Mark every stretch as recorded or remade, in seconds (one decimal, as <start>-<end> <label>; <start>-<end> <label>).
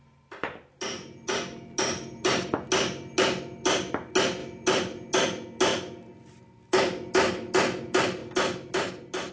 0.0-9.3 recorded